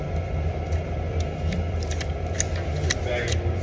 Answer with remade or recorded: recorded